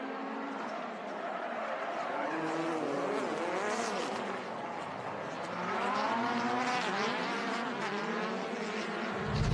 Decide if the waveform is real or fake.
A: real